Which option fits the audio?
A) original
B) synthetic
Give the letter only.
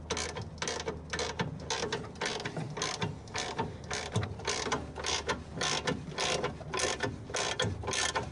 A